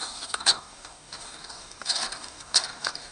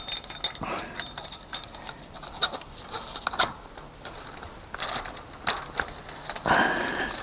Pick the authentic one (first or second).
second